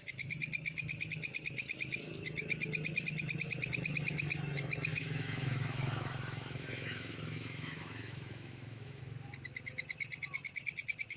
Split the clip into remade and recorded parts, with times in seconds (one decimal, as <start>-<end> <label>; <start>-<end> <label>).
0.0-4.9 recorded; 4.9-9.0 remade; 9.0-11.2 recorded